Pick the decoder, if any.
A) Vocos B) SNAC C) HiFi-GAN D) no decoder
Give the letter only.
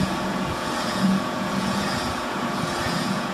A